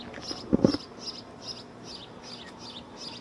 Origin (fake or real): real